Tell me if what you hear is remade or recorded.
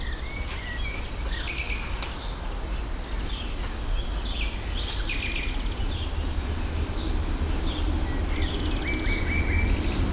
recorded